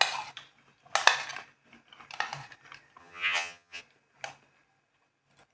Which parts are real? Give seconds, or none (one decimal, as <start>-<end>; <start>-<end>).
0.0-3.0; 3.8-5.5

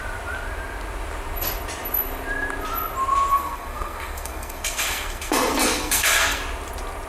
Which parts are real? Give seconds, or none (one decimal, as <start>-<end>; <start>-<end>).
0.0-3.3; 6.4-7.1

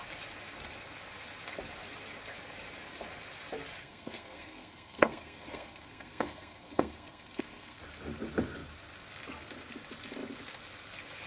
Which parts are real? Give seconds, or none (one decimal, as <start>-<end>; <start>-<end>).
0.0-3.8; 7.8-11.3

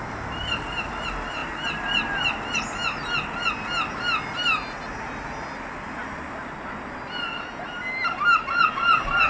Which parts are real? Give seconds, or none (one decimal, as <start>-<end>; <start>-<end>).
0.0-9.3

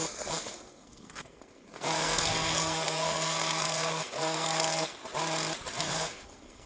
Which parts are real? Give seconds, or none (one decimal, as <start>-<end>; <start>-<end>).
5.0-5.8